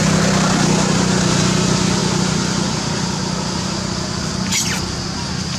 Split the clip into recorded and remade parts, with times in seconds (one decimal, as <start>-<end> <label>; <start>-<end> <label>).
0.0-5.6 recorded

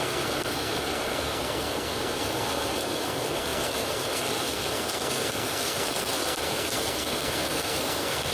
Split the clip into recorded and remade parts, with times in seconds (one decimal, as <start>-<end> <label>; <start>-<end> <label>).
0.0-8.3 remade

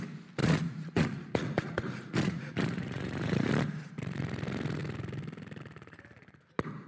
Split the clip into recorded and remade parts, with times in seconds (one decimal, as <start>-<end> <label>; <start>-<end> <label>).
0.0-0.4 recorded; 0.4-3.5 remade; 3.5-6.9 recorded

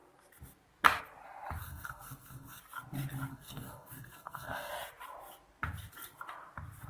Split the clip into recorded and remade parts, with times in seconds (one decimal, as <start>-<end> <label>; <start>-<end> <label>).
0.0-1.6 recorded; 1.6-2.6 remade; 2.6-3.3 recorded; 3.3-4.7 remade; 4.7-6.9 recorded

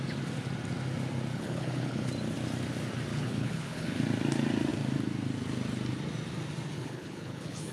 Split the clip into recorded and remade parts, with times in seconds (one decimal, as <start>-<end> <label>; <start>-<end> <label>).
0.0-1.3 recorded; 1.3-2.1 remade; 2.1-3.1 recorded; 3.1-4.0 remade; 4.0-6.7 recorded; 6.7-7.7 remade

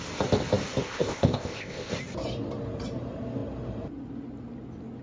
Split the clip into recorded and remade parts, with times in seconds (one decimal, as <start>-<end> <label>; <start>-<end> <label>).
0.0-0.8 recorded; 0.8-1.9 remade; 1.9-5.0 recorded

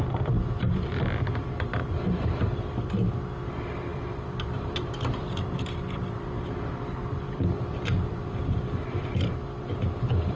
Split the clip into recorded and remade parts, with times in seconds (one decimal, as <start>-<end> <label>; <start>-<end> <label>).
0.0-3.9 recorded; 3.9-9.2 remade; 9.2-10.4 recorded

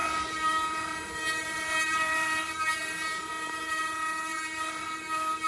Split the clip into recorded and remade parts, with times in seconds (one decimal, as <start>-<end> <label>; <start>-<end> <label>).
0.0-3.3 remade; 3.3-4.3 recorded; 4.3-5.5 remade